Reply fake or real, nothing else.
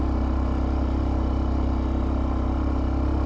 real